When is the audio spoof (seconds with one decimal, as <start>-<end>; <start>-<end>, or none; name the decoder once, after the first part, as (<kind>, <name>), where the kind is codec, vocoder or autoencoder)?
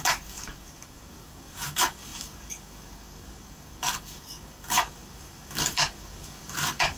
0.0-7.0 (codec, DAC)